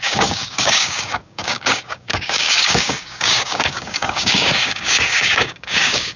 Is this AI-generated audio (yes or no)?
yes